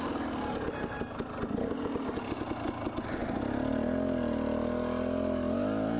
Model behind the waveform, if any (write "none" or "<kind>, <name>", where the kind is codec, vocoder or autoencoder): none